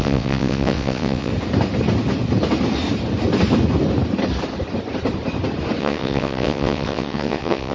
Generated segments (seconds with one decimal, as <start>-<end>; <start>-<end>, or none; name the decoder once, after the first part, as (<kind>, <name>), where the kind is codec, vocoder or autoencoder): 0.0-1.3 (vocoder, WaveNeXt); 5.8-7.7